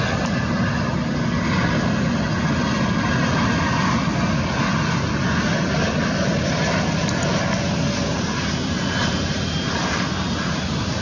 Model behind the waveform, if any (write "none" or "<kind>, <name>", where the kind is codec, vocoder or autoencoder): none